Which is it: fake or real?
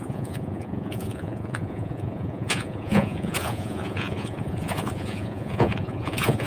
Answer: fake